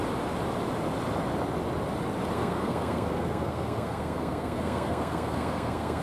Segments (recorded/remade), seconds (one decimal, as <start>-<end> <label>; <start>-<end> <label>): 0.0-2.3 recorded; 2.3-6.0 remade